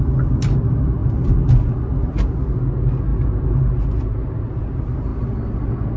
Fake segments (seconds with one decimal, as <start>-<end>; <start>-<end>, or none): none